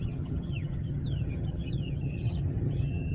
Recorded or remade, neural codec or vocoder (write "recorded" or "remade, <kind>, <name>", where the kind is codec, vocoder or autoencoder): remade, vocoder, HiFi-GAN